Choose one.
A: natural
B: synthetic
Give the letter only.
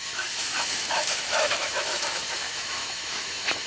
B